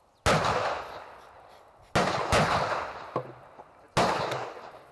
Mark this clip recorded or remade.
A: recorded